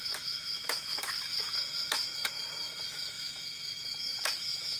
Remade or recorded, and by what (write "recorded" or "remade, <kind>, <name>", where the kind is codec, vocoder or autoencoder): remade, autoencoder, DAC-VAE